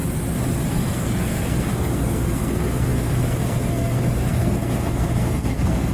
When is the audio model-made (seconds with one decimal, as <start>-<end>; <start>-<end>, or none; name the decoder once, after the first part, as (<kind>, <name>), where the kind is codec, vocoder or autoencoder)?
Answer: 0.7-5.9 (codec, SNAC)